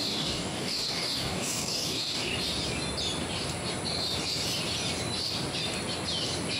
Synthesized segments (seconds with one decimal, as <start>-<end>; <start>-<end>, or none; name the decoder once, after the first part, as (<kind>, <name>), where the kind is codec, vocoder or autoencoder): 0.0-2.3 (codec, DAC)